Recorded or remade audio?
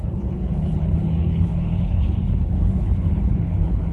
remade